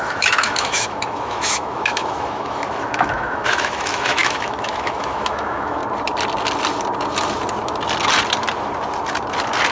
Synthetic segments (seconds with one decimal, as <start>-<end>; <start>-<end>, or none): 0.0-5.8